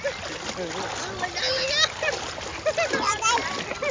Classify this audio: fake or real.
real